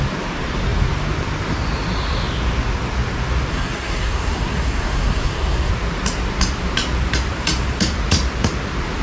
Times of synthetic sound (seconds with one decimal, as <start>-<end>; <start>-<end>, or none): 3.5-5.7